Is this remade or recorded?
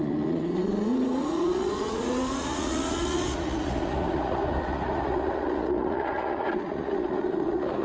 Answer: remade